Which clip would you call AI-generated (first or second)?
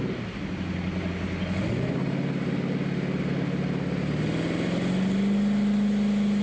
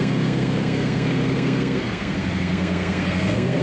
second